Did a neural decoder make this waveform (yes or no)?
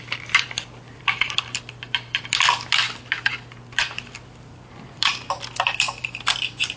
yes